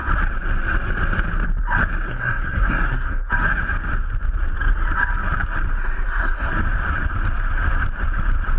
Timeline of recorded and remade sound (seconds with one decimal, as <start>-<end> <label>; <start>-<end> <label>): 0.0-2.1 recorded; 2.1-3.3 remade; 3.3-5.8 recorded; 5.8-6.5 remade; 6.5-8.6 recorded